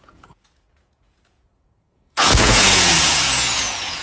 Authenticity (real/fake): fake